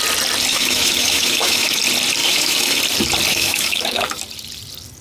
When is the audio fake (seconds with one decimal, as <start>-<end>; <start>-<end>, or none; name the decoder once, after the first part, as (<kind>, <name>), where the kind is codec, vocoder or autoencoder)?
0.5-1.8 (autoencoder, DAC-VAE); 2.2-2.8; 3.3-4.2